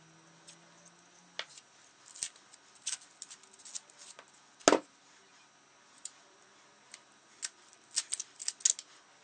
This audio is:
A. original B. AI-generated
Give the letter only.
A